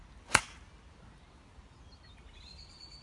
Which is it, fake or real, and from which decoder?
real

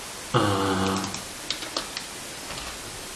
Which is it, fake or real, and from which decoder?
real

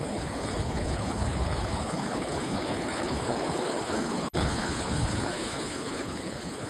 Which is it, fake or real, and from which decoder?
fake, codec, HILCodec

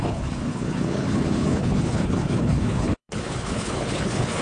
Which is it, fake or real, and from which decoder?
fake, codec, HILCodec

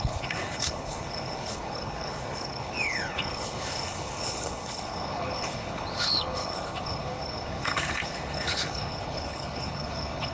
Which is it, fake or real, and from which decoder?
fake, codec, HILCodec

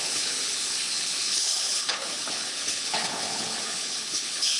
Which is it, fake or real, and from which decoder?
fake, codec, HILCodec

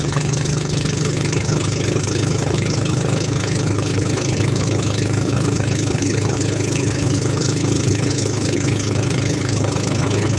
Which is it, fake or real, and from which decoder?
fake, codec, HILCodec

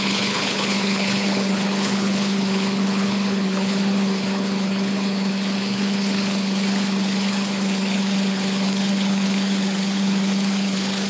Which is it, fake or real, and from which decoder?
fake, codec, HILCodec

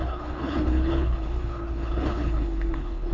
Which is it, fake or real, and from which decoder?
fake, codec, HILCodec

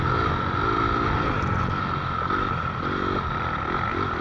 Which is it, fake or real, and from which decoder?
real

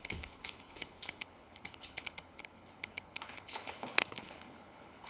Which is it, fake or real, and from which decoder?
fake, codec, HILCodec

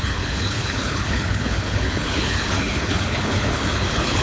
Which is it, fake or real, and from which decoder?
fake, codec, HILCodec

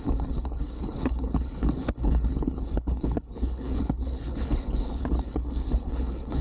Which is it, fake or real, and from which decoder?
fake, codec, HILCodec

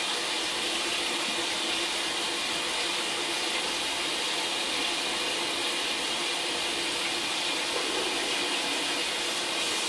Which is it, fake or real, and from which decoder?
real